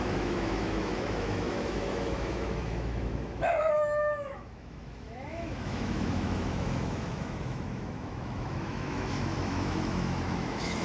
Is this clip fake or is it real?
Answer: fake